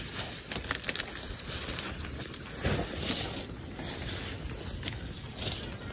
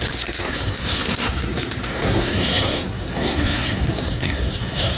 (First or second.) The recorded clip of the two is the first